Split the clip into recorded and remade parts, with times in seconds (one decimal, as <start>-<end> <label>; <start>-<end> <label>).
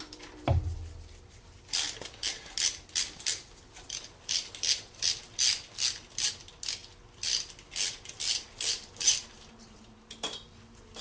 0.0-11.0 recorded